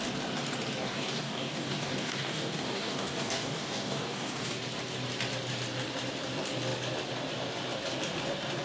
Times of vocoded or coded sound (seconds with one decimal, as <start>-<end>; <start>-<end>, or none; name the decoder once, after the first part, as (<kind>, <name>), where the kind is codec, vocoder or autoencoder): 0.8-4.5 (codec, DAC)